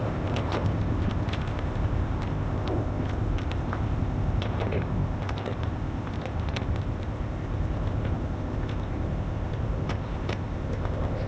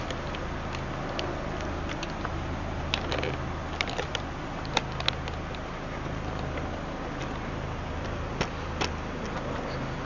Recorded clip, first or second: second